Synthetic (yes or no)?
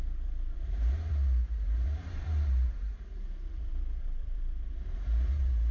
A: yes